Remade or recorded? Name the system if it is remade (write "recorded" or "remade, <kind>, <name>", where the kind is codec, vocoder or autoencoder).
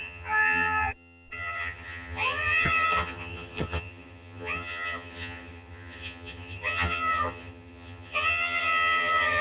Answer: remade, vocoder, HiFi-GAN